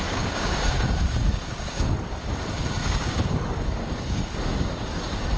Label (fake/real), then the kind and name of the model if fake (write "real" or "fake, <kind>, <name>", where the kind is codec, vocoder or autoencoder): fake, codec, DAC